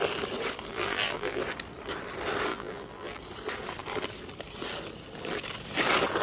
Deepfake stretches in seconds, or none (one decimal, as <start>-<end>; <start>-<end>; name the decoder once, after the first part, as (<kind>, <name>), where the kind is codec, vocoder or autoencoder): 0.7-1.4 (vocoder, BigVGAN v2); 2.5-3.2